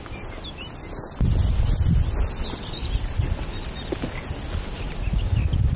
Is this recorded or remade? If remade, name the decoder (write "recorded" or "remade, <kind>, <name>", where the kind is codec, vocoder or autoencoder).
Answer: recorded